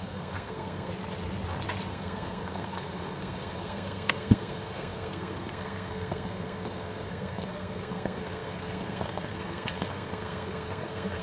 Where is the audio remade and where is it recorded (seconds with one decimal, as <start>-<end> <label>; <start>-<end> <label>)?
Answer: 0.0-0.9 remade; 0.9-1.9 recorded; 1.9-11.2 remade